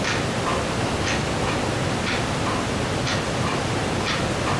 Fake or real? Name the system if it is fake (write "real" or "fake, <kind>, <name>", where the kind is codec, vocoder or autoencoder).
real